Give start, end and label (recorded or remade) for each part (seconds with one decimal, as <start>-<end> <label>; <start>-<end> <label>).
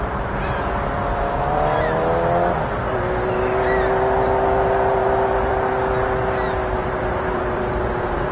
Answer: 0.0-6.8 recorded; 6.8-8.3 remade